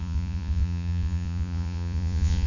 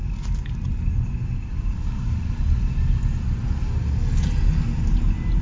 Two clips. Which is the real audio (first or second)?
second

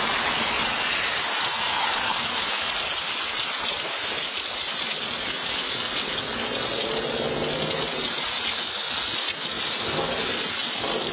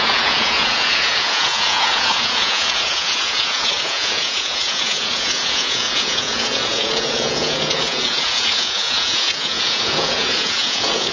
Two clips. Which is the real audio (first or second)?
first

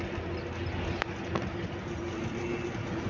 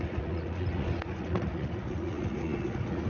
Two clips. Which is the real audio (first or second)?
first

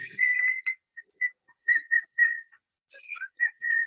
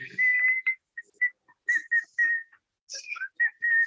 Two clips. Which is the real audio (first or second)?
second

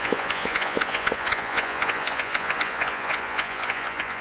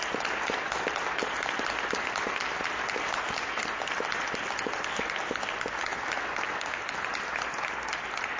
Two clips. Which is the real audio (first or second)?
second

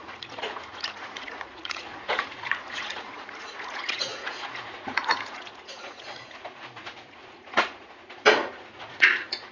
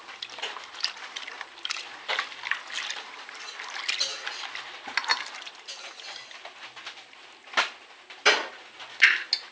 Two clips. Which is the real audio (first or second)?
second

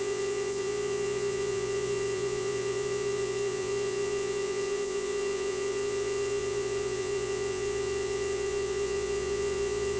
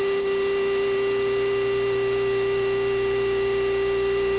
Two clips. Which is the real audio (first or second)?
second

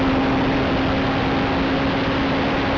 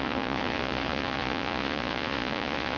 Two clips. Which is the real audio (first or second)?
first